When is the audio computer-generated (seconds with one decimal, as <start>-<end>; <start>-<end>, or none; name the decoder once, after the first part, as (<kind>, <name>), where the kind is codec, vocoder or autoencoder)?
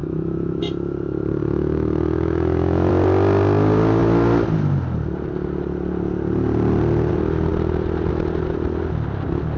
0.0-0.6 (autoencoder, DAC-VAE); 1.4-2.9